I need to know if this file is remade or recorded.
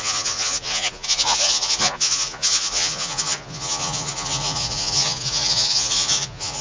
remade